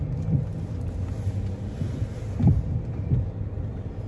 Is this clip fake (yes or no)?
no